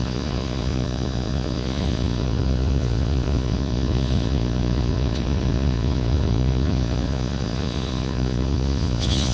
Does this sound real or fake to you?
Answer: fake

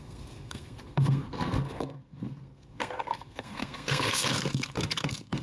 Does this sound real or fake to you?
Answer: fake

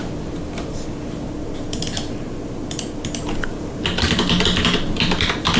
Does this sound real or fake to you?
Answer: real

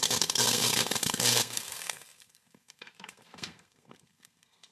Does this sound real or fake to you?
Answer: fake